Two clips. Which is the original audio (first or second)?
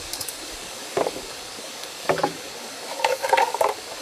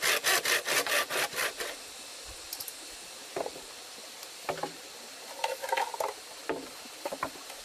second